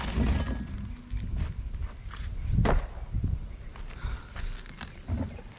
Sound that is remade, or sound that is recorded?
recorded